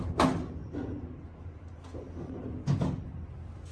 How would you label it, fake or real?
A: real